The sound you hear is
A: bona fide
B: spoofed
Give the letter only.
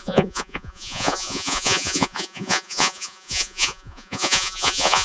B